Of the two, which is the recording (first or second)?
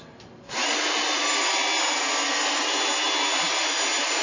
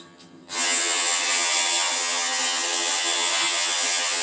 first